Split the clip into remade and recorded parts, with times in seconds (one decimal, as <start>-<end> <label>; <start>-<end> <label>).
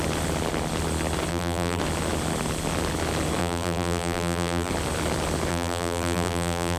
0.0-1.3 recorded; 1.3-1.8 remade; 1.8-3.4 recorded; 3.4-4.7 remade; 4.7-5.5 recorded; 5.5-6.8 remade